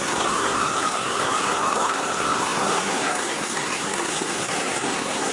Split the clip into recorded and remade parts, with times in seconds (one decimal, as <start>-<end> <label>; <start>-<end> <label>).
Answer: 0.0-5.3 remade